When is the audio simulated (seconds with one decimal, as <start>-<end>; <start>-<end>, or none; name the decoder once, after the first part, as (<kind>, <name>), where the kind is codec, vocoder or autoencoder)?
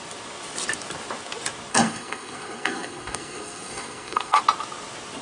1.7-4.4 (codec, SNAC)